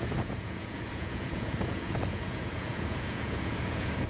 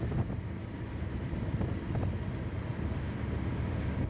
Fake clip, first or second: first